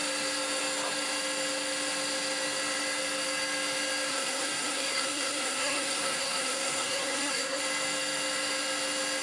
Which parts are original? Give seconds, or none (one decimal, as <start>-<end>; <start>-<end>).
0.0-4.1; 7.6-9.2